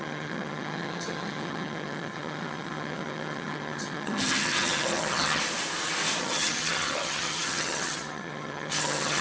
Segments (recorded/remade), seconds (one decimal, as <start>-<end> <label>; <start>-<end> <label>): 0.0-5.4 remade; 5.4-6.2 recorded; 6.2-9.2 remade